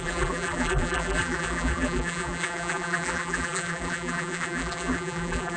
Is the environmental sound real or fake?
fake